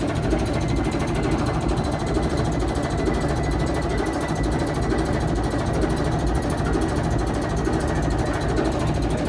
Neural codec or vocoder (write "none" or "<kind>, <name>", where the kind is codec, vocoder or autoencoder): none